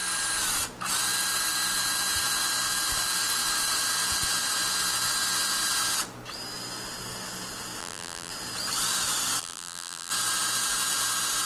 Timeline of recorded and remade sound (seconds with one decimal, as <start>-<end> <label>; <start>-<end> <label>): 0.0-7.8 recorded; 7.8-8.3 remade; 8.3-9.4 recorded; 9.4-10.1 remade; 10.1-11.5 recorded